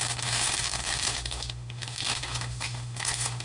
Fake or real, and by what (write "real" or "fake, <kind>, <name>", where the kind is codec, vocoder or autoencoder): fake, autoencoder, DAC-VAE